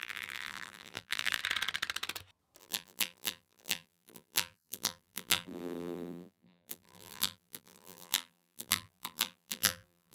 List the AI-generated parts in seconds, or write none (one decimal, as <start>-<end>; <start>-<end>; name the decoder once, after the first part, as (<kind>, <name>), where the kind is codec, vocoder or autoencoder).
0.0-1.4 (vocoder, BigVGAN v2); 2.6-10.1